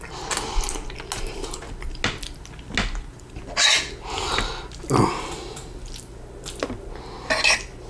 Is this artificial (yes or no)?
no